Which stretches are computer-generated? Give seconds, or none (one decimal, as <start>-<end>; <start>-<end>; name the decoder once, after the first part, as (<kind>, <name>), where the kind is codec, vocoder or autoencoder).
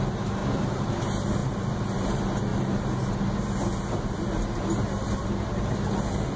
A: none